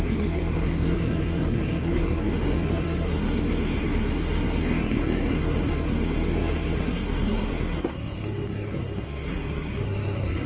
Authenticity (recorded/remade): remade